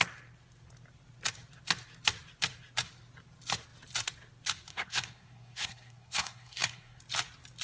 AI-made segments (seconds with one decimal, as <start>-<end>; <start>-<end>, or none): 4.7-7.0